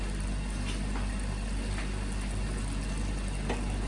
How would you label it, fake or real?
real